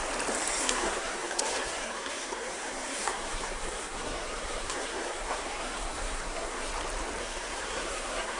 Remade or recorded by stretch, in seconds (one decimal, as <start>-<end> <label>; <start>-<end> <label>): 0.0-0.6 recorded; 0.6-6.7 remade; 6.7-7.2 recorded; 7.2-8.4 remade